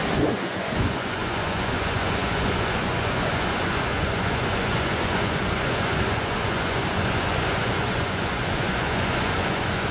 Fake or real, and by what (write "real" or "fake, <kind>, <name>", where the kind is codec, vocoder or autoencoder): fake, vocoder, Vocos